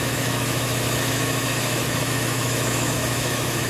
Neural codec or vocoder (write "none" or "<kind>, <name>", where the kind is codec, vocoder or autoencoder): autoencoder, DAC-VAE